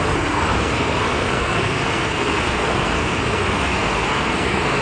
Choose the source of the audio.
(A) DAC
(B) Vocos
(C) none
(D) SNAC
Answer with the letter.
D